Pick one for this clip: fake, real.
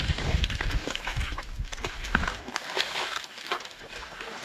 fake